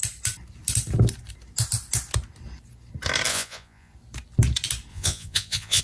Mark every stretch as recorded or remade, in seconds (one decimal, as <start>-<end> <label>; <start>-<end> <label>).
0.0-3.3 recorded; 3.3-3.9 remade; 3.9-4.9 recorded; 4.9-5.8 remade